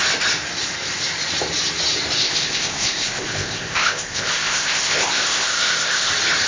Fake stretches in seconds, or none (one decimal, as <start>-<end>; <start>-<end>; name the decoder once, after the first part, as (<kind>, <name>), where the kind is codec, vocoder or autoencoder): 2.2-6.1 (codec, ZipCodec)